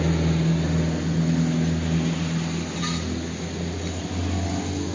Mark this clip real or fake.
real